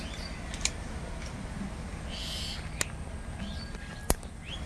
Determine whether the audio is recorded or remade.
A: recorded